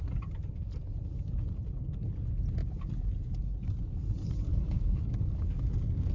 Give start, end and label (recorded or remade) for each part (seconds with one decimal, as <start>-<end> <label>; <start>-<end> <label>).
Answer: 0.0-4.5 recorded; 4.5-6.1 remade